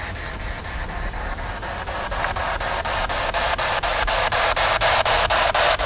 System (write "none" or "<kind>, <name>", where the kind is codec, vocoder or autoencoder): none